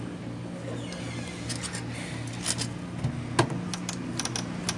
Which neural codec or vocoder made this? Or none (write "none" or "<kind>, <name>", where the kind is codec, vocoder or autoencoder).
none